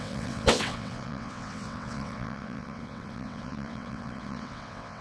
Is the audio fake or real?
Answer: fake